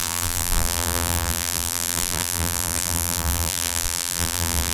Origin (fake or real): fake